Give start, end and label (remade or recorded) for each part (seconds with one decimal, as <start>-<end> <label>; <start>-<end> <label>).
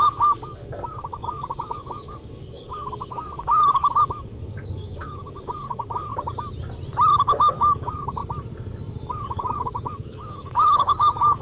0.0-6.1 remade; 6.1-7.1 recorded; 7.1-8.2 remade; 8.2-9.1 recorded; 9.1-11.4 remade